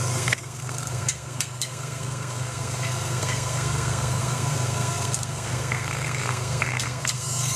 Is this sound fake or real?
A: fake